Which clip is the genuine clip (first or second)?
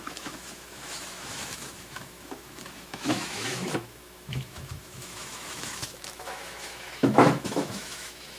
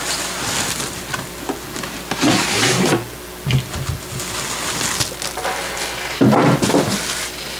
second